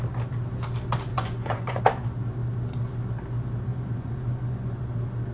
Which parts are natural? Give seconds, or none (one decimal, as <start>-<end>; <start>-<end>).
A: 0.0-1.1; 1.8-3.7; 4.8-5.3